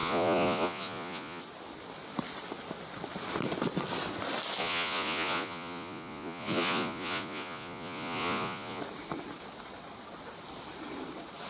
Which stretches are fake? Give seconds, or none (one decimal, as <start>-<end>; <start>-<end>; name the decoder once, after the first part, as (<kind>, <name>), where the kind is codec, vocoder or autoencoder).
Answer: 0.0-1.4 (vocoder, Vocos); 4.6-8.8